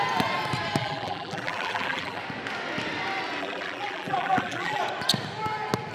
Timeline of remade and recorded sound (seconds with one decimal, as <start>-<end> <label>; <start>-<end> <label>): 0.0-0.8 recorded; 0.8-2.2 remade; 2.2-3.4 recorded; 3.4-4.8 remade; 4.8-5.9 recorded

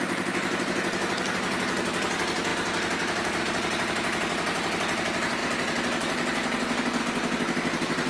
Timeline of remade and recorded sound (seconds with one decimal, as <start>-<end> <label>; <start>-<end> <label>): 0.0-8.1 recorded